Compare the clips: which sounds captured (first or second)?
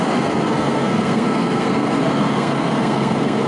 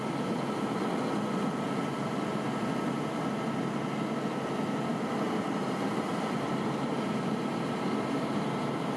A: second